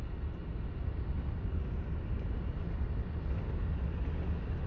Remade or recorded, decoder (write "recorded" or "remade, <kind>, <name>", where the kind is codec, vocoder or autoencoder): recorded